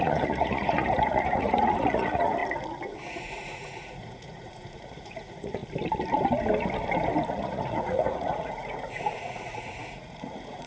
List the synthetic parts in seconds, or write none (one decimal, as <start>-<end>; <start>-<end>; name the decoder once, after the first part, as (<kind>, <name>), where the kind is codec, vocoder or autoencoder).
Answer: 0.0-2.4 (vocoder, Vocos); 3.1-5.6; 7.3-10.7